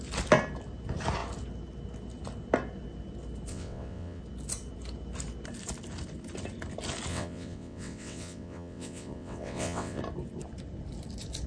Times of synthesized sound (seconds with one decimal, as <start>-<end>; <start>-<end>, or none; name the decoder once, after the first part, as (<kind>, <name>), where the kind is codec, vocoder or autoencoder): 3.5-4.2 (vocoder, WaveNeXt); 7.1-10.0